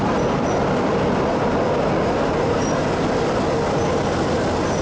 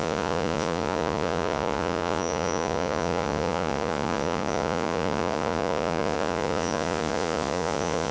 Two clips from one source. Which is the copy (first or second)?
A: second